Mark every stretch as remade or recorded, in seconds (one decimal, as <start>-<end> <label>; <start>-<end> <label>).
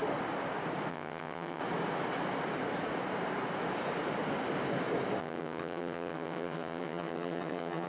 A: 0.0-0.9 recorded; 0.9-1.6 remade; 1.6-5.2 recorded; 5.2-7.9 remade